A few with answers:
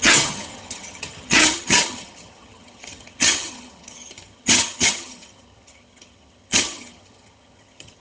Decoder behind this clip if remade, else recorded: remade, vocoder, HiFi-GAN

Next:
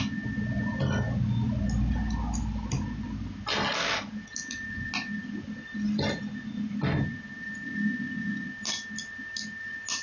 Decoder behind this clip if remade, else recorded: recorded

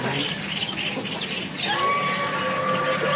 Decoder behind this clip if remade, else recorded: recorded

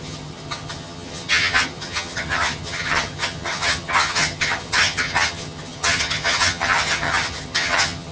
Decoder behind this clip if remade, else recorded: remade, vocoder, HiFi-GAN